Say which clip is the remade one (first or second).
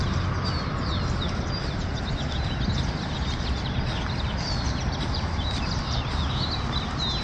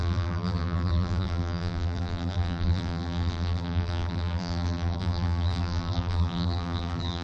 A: second